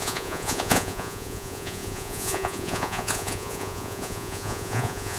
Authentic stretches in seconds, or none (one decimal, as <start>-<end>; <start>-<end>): none